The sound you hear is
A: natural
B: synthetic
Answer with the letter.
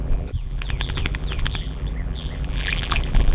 B